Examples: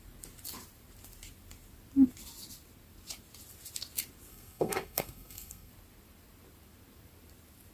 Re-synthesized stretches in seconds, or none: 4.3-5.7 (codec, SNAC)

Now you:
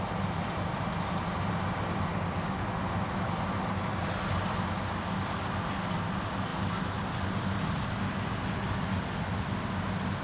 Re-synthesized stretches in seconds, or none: none

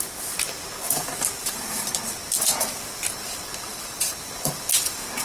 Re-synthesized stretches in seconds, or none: 1.4-1.9 (vocoder, BigVGAN v2); 3.7-4.3

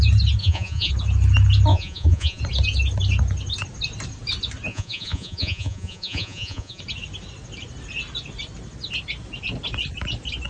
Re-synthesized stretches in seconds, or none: 0.4-0.9 (vocoder, Vocos); 1.7-2.4; 4.7-6.8

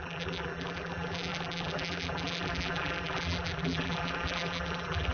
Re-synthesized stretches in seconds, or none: 0.0-5.1 (vocoder, BigVGAN v2)

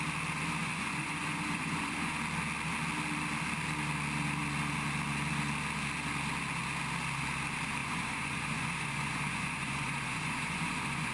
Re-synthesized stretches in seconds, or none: 0.6-2.1 (vocoder, Vocos); 7.8-11.1

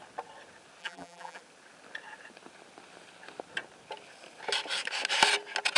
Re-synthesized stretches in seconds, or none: 0.8-1.4 (vocoder, BigVGAN v2)